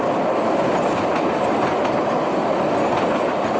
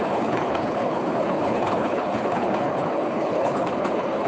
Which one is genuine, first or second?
first